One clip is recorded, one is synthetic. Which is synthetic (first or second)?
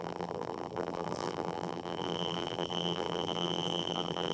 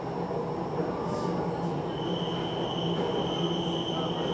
first